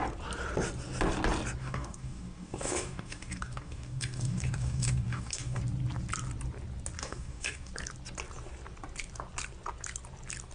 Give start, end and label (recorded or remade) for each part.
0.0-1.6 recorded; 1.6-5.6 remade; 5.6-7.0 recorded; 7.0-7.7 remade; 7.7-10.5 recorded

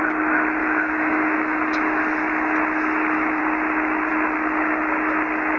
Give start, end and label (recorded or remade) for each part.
0.0-0.6 recorded; 0.6-3.4 remade; 3.4-5.6 recorded

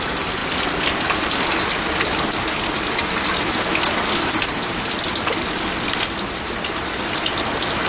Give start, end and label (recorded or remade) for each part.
0.0-7.9 recorded

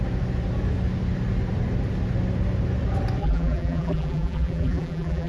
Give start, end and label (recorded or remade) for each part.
0.0-3.2 recorded; 3.2-5.3 remade